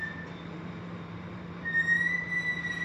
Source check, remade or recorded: remade